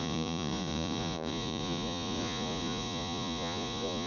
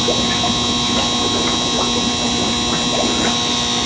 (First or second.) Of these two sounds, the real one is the second